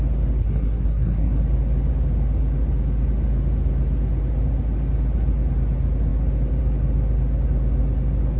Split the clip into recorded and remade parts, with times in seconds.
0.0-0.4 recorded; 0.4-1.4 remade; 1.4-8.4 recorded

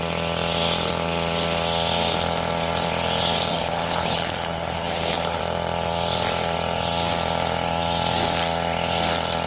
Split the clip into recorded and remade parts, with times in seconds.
0.0-3.5 recorded; 3.5-5.4 remade; 5.4-9.5 recorded

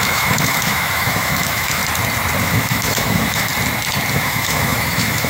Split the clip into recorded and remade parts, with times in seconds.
0.0-1.8 remade; 1.8-2.4 recorded; 2.4-3.5 remade; 3.5-4.1 recorded; 4.1-5.3 remade